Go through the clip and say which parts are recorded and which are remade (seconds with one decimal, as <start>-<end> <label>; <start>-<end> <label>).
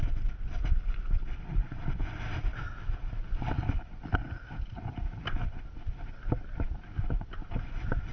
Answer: 0.0-8.1 recorded